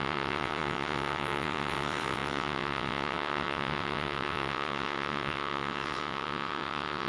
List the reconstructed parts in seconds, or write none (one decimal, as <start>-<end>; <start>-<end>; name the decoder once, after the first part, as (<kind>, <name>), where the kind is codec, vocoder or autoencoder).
0.0-7.1 (vocoder, WaveNeXt)